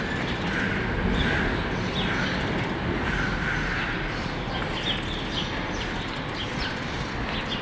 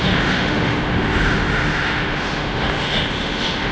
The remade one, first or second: second